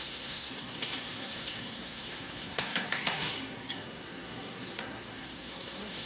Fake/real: fake